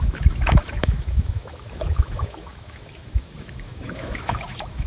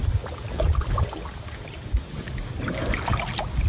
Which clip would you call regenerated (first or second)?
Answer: first